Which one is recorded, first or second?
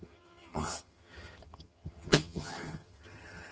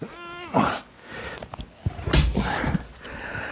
second